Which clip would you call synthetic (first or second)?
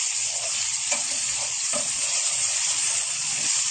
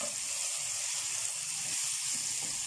first